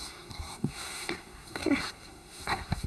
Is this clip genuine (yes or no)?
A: no